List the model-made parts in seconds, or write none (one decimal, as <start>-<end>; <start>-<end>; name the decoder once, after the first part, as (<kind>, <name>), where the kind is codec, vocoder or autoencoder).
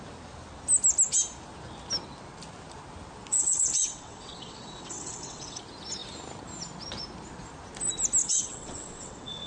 3.3-5.6 (vocoder, WaveNeXt); 8.2-9.5